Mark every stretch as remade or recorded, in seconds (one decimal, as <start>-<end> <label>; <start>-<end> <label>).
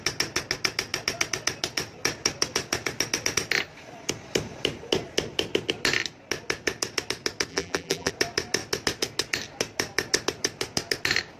0.0-7.5 recorded; 7.5-8.1 remade; 8.1-11.4 recorded